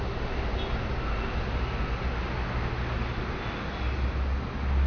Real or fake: real